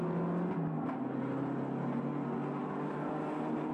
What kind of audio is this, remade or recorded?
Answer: recorded